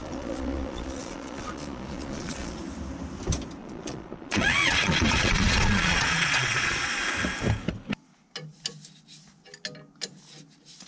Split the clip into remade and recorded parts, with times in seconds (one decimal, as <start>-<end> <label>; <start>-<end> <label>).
0.0-2.6 remade; 2.6-3.6 recorded; 3.6-7.0 remade; 7.0-10.9 recorded